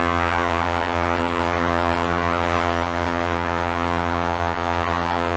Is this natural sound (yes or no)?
no